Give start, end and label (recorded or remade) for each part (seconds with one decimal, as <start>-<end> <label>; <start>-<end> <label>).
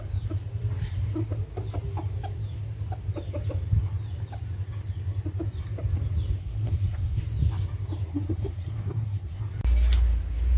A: 0.0-6.4 recorded; 6.4-7.2 remade; 7.2-8.1 recorded; 8.1-9.4 remade; 9.4-10.6 recorded